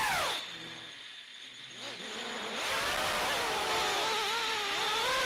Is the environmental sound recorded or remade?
recorded